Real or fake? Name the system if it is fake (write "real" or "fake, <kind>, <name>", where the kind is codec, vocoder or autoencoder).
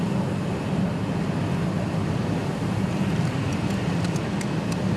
real